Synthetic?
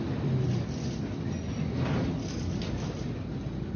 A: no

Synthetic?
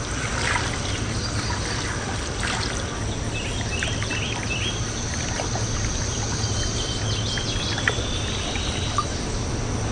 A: no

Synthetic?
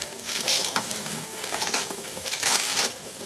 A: yes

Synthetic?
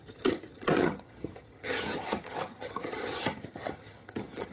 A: yes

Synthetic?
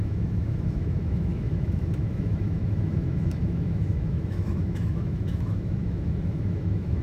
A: yes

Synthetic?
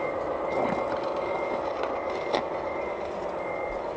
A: no